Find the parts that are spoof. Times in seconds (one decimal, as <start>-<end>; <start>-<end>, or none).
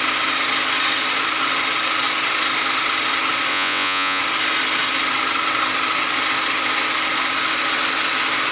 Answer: 3.5-4.2